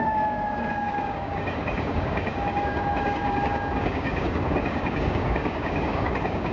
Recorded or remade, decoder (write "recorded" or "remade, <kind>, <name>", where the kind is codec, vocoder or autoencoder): remade, codec, DAC